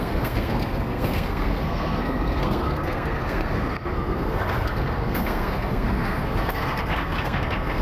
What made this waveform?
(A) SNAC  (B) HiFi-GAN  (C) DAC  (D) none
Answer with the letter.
A